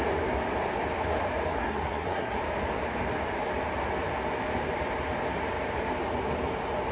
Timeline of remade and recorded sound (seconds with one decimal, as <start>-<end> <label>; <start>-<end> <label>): 0.0-1.5 recorded; 1.5-2.4 remade; 2.4-6.9 recorded